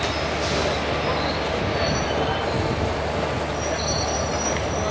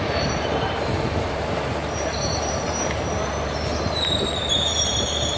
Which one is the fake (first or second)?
second